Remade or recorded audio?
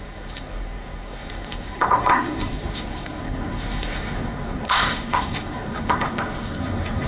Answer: remade